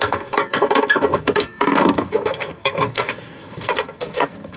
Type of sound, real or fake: fake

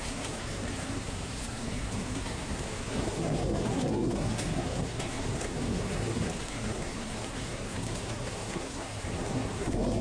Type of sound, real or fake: fake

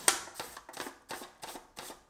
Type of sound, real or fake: real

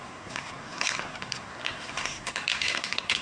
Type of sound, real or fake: fake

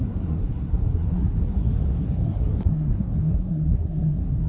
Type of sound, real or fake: fake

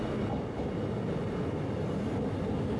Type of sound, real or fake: real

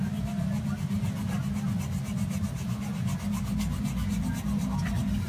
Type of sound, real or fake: real